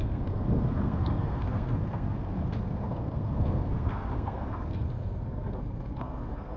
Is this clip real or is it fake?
fake